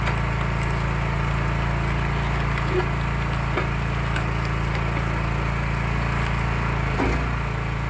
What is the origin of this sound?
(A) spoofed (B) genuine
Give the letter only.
B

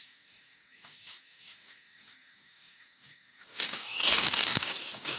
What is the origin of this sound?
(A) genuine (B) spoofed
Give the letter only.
B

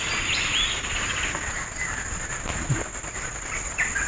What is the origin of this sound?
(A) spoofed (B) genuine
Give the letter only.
B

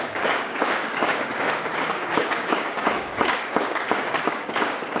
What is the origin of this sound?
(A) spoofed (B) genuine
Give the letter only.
A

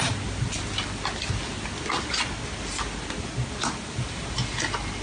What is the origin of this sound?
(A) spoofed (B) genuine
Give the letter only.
B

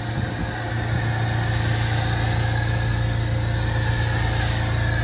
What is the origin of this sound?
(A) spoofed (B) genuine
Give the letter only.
B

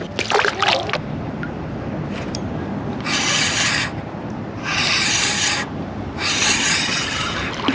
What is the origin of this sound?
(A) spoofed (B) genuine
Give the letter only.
B